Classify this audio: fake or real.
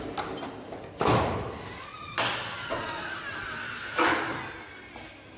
real